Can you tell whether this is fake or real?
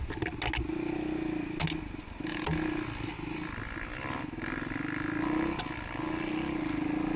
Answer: real